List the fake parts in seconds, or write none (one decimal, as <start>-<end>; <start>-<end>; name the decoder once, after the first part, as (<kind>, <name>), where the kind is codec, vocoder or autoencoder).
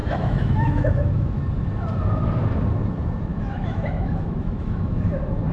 0.0-1.4 (autoencoder, DAC-VAE); 3.3-5.1